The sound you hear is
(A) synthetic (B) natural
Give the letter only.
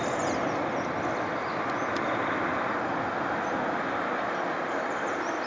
B